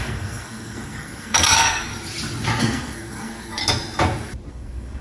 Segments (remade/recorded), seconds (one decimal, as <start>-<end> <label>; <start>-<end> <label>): 0.0-1.9 remade; 1.9-2.6 recorded; 2.6-3.6 remade; 3.6-4.5 recorded; 4.5-5.0 remade